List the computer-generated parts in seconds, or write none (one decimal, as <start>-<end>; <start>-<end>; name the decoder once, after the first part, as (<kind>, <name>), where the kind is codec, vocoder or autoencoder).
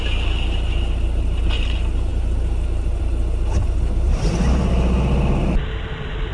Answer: none